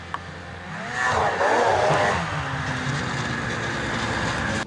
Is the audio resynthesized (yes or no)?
no